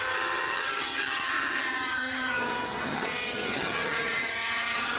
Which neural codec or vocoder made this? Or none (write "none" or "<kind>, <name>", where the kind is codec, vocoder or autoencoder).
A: vocoder, HiFi-GAN